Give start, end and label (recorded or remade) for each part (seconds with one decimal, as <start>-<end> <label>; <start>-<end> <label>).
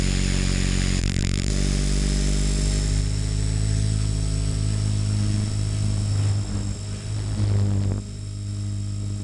0.0-1.0 recorded; 1.0-1.5 remade; 1.5-9.2 recorded